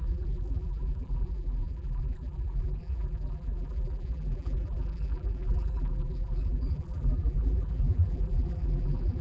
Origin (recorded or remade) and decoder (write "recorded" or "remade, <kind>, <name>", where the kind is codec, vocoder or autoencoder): remade, vocoder, BigVGAN v2